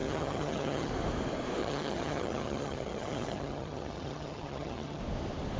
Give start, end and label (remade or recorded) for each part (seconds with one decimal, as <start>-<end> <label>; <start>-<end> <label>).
0.0-0.9 remade; 0.9-1.6 recorded; 1.6-5.0 remade; 5.0-5.6 recorded